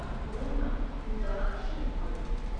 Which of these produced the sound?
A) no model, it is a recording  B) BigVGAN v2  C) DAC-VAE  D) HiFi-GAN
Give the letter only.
A